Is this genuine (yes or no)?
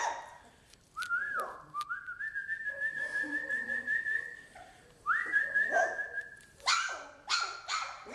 no